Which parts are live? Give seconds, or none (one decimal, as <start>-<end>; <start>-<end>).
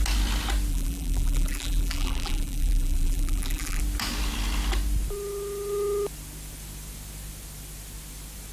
0.0-0.7; 3.8-8.5